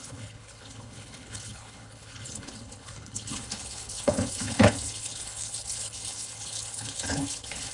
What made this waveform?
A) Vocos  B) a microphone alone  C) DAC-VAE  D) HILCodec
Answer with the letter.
D